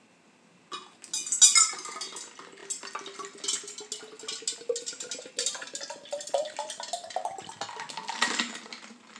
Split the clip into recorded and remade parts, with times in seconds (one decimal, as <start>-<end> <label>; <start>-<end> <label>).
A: 0.0-9.2 recorded